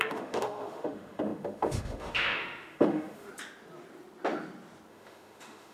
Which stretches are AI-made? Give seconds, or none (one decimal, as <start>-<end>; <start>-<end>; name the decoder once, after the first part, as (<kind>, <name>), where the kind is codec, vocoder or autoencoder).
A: 0.0-3.3 (autoencoder, DAC-VAE); 4.9-5.7